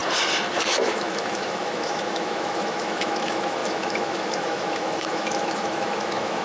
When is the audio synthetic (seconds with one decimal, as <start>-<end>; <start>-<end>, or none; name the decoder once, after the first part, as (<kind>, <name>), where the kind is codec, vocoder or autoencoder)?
0.6-6.4 (autoencoder, DAC-VAE)